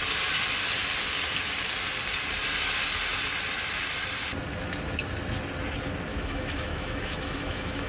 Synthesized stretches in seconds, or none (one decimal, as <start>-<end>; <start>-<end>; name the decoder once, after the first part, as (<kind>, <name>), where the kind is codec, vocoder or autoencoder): 6.1-7.9 (autoencoder, DAC-VAE)

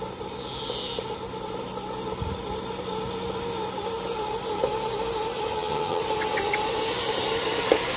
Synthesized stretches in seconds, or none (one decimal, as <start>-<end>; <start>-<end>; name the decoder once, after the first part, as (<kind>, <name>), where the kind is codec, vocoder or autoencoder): 5.5-6.0 (vocoder, HiFi-GAN)

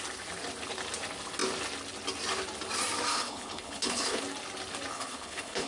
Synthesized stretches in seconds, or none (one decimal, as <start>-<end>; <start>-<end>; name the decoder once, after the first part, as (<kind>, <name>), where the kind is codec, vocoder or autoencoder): 3.1-4.2 (codec, HILCodec); 4.9-5.7

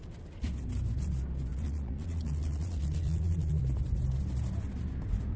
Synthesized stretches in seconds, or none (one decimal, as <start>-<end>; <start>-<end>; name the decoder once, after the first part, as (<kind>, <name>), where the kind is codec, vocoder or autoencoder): 1.5-3.6 (vocoder, Vocos)

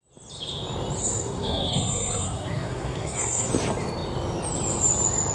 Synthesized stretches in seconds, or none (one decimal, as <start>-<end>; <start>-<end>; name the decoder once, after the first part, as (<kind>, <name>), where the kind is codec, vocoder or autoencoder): 1.0-3.5 (codec, SNAC)

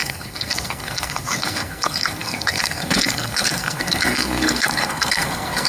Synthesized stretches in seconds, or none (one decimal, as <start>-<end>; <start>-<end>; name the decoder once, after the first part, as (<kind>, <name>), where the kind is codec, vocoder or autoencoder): 0.0-5.7 (codec, SNAC)

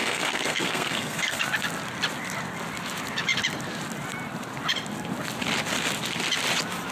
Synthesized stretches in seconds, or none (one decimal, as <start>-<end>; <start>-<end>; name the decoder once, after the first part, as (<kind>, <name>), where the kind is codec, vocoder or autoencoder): 0.0-1.4 (codec, SNAC)